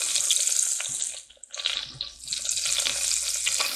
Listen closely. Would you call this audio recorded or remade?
recorded